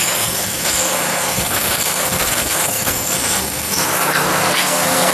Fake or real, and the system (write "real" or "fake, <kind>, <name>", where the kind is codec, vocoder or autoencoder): fake, codec, SNAC